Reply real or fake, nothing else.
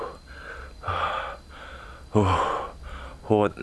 real